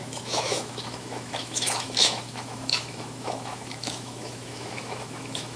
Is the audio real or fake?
fake